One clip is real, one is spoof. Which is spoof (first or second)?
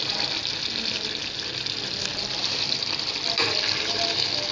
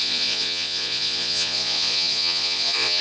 second